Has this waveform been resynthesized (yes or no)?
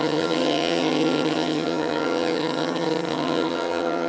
yes